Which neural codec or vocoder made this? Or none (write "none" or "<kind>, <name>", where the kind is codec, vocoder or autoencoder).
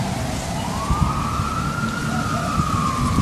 none